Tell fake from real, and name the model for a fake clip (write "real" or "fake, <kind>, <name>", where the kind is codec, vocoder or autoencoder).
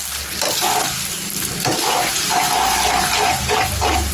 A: real